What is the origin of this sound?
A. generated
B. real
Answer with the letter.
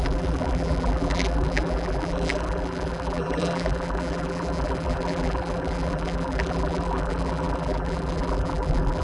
A